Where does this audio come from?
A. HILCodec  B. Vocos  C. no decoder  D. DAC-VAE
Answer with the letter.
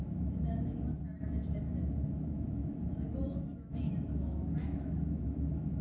D